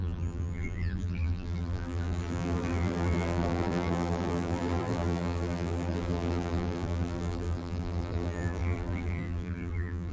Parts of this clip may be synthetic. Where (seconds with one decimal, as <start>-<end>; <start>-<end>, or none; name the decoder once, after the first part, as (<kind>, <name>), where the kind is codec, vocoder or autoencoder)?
0.0-10.1 (vocoder, BigVGAN v2)